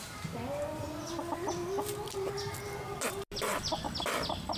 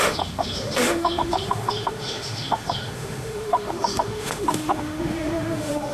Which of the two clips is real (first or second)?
first